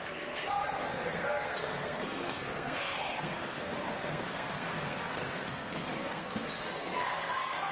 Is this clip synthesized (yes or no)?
yes